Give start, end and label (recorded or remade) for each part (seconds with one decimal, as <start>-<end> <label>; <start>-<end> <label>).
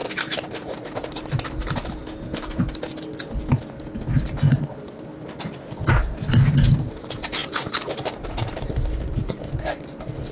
0.0-2.0 remade; 2.0-6.9 recorded; 6.9-10.3 remade